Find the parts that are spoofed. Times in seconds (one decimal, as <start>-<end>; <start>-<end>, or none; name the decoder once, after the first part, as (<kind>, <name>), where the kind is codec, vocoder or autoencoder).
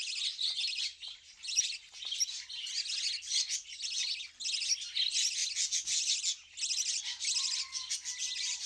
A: none